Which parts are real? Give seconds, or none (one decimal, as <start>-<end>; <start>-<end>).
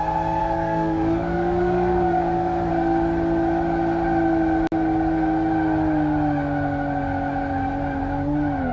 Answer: 0.0-0.4; 2.7-8.7